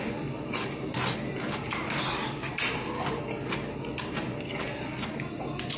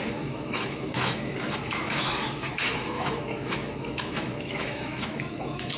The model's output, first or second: second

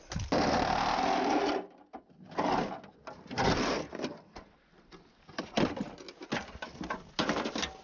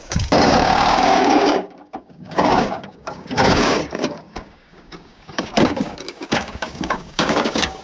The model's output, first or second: second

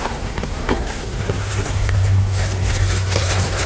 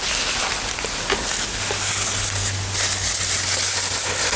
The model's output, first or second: first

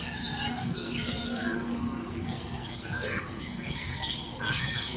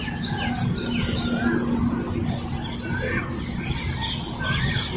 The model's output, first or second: first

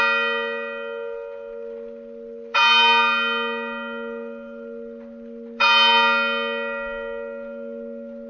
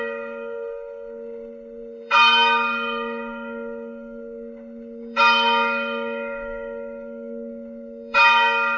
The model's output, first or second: second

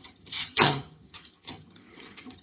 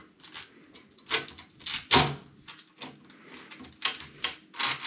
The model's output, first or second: first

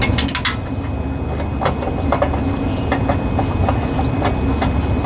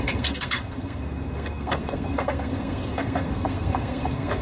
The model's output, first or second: second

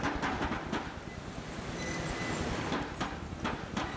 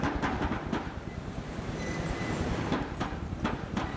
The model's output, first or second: second